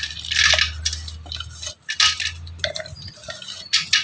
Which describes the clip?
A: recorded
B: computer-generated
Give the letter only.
A